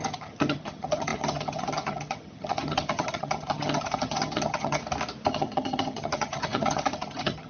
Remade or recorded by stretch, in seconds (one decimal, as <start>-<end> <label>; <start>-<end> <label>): 0.0-4.8 remade; 4.8-5.3 recorded; 5.3-7.5 remade